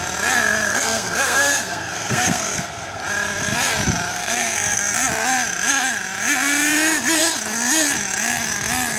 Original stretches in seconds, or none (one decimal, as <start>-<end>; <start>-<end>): 0.0-0.7; 3.0-4.1; 4.8-9.0